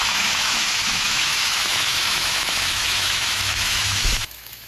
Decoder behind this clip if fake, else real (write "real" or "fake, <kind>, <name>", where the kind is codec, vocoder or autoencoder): fake, autoencoder, DAC-VAE